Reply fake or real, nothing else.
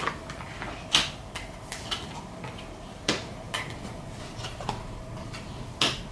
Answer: real